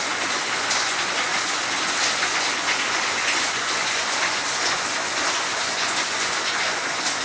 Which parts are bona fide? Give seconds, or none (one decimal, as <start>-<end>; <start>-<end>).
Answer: none